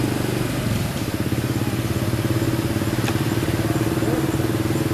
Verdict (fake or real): real